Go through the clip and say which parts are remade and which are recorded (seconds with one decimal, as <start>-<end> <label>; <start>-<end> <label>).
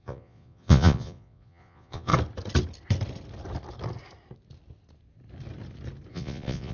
0.0-2.1 remade; 2.1-6.1 recorded; 6.1-6.7 remade